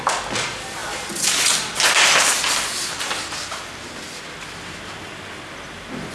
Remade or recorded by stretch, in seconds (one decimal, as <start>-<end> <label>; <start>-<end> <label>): 0.0-6.1 recorded

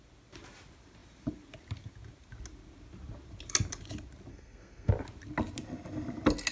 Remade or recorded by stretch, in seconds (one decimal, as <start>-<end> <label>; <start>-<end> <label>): 0.0-4.3 recorded; 4.3-4.9 remade; 4.9-6.5 recorded

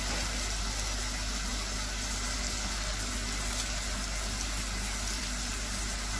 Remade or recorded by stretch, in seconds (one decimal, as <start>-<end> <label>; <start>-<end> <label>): 0.0-6.2 recorded